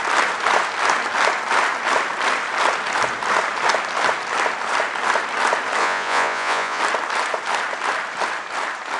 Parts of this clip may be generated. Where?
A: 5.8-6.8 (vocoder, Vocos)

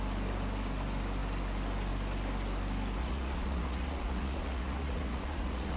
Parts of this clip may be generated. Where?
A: 3.0-5.8 (vocoder, Vocos)